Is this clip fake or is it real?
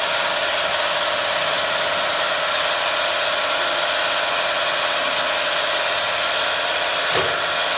real